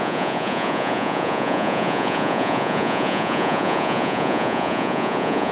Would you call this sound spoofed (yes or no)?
yes